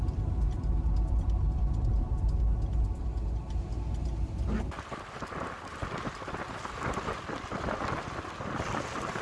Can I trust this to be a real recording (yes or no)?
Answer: yes